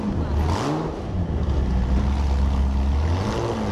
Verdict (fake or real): real